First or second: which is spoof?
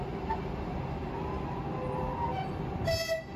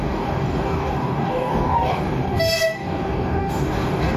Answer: second